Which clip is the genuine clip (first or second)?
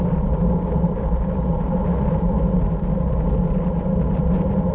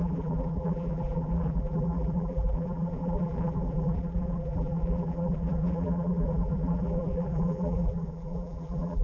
first